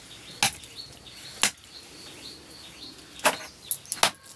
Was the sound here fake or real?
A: real